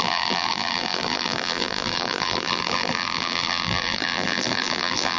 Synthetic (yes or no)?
yes